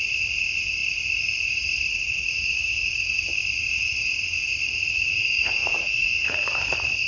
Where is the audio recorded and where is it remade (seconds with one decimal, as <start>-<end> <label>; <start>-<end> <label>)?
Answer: 0.0-5.6 recorded; 5.6-6.6 remade; 6.6-7.1 recorded